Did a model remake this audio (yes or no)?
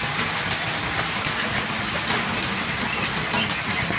no